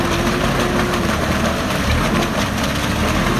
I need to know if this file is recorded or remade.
recorded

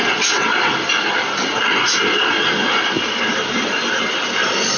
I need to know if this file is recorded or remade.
recorded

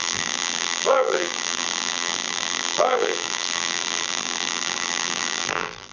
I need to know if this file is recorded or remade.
remade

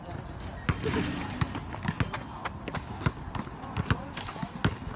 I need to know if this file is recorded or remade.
recorded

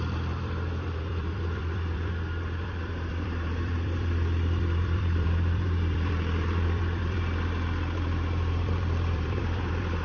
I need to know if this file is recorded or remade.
remade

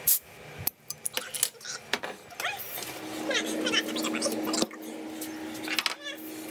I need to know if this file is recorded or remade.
recorded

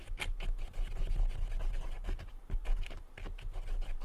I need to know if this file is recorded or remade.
recorded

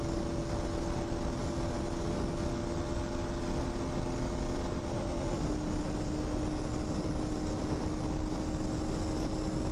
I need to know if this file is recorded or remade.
recorded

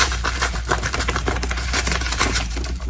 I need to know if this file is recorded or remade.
remade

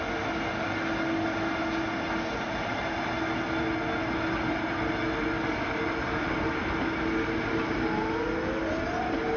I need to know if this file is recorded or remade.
recorded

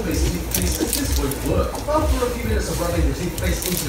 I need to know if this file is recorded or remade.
recorded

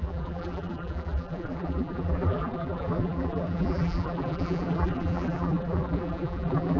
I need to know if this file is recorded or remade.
remade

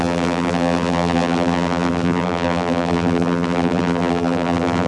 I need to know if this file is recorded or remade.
remade